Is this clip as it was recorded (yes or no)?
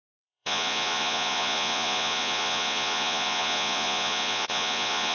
no